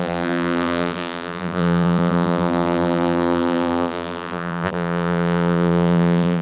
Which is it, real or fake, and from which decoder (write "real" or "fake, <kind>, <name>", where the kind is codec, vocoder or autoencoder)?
fake, vocoder, BigVGAN v2